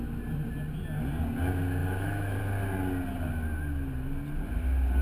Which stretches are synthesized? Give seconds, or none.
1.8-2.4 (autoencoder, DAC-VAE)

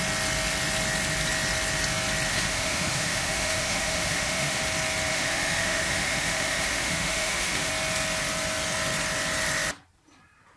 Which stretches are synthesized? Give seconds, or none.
2.3-4.6 (autoencoder, DAC-VAE); 5.1-7.7

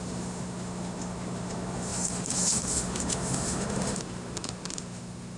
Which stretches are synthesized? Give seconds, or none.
0.0-5.4 (autoencoder, DAC-VAE)

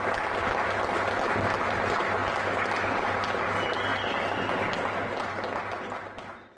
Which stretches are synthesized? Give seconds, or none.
none

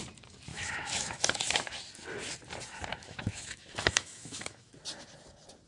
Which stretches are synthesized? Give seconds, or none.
0.5-1.2 (autoencoder, DAC-VAE); 2.9-4.7